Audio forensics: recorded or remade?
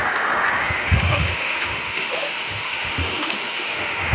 remade